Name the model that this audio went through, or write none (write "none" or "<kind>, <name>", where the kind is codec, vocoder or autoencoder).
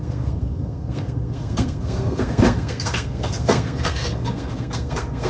codec, SNAC